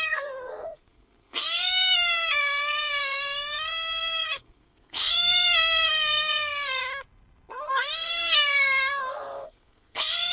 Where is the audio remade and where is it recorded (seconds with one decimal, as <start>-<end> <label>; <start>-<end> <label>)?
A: 0.0-6.8 remade; 6.8-7.5 recorded; 7.5-10.3 remade